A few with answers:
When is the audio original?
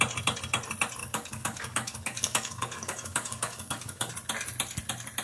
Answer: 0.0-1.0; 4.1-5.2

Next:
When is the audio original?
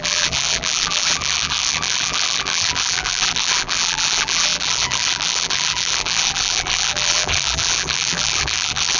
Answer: none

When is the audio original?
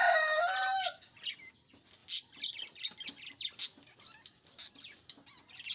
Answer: 0.0-5.7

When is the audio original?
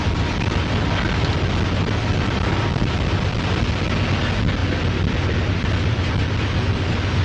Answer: 0.0-7.2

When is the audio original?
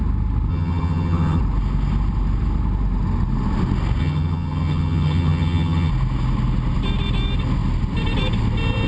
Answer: 0.0-0.5; 1.4-4.0; 5.9-8.9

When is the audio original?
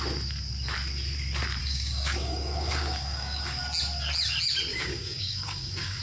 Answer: 0.0-1.6; 3.6-4.7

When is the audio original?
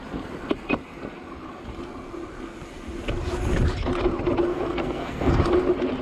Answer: 0.0-4.5; 5.4-6.0